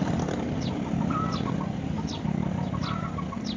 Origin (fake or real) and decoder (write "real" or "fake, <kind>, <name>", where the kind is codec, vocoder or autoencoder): real